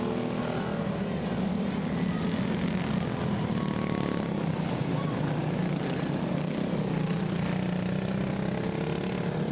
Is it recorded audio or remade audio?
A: recorded